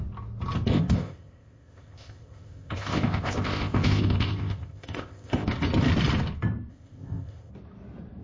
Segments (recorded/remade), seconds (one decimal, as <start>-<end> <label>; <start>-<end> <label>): 0.0-0.7 recorded; 0.7-5.5 remade; 5.5-6.7 recorded; 6.7-7.5 remade; 7.5-8.2 recorded